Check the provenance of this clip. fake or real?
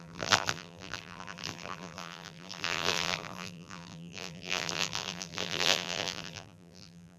fake